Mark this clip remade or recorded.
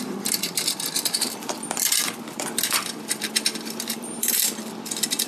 remade